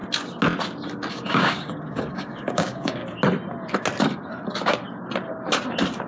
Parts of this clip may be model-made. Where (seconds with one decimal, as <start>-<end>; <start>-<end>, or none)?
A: 1.1-3.0